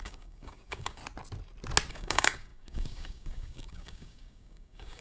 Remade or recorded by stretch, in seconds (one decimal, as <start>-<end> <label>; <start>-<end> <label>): 0.0-1.0 remade; 1.0-1.9 recorded; 1.9-5.0 remade